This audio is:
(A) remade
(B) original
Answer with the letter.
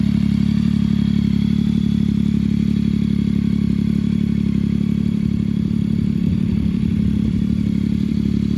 A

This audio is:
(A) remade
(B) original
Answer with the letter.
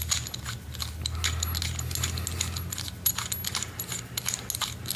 B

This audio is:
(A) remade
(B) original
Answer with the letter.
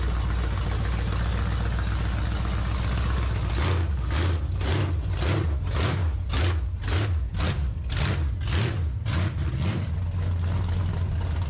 B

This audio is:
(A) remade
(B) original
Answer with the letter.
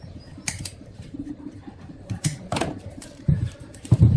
A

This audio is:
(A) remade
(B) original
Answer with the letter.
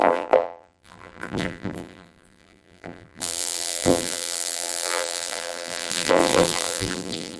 A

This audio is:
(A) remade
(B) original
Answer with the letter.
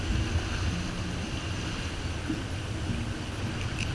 B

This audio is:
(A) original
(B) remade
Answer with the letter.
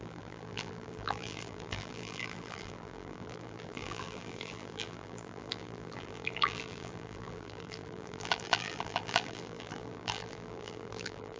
B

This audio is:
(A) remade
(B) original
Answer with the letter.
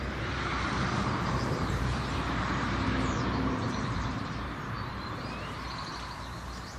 A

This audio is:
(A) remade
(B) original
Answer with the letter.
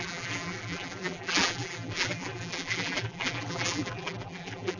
A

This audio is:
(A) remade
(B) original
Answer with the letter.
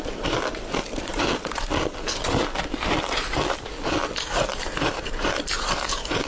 A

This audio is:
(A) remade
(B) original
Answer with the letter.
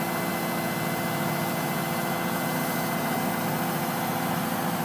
B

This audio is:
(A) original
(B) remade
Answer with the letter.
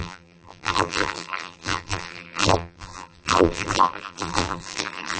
B